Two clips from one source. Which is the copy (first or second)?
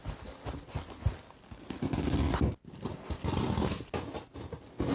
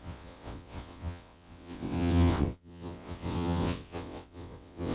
second